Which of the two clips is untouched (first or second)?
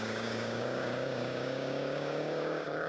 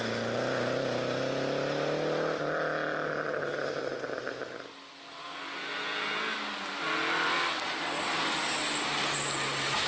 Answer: second